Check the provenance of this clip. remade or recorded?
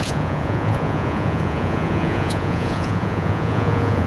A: remade